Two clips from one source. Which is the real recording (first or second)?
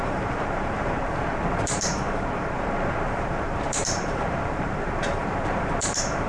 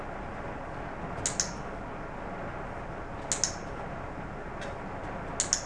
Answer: second